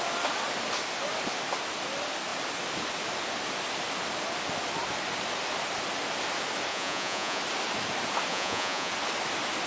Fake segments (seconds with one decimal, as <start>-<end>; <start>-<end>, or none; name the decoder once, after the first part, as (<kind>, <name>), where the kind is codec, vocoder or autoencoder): 6.7-7.4 (vocoder, Vocos); 8.3-8.9